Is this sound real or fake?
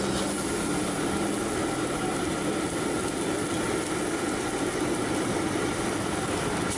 real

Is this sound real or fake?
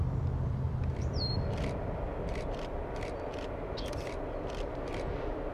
real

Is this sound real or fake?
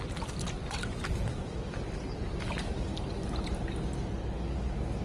real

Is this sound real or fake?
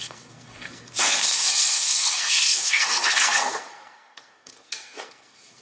fake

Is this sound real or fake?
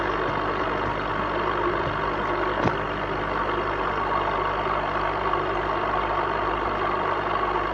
real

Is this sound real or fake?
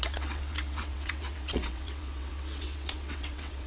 fake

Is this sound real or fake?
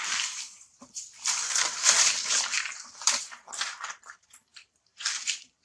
fake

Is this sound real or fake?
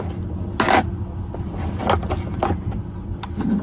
real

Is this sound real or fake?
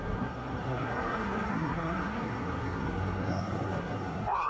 fake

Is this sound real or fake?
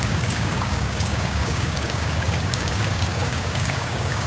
fake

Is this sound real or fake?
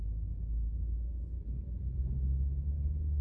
real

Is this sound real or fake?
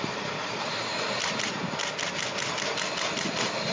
real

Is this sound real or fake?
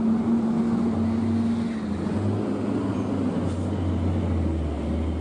real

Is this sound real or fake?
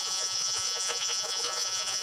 fake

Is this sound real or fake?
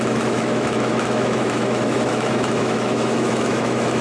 fake